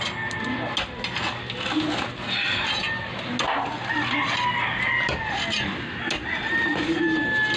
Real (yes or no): yes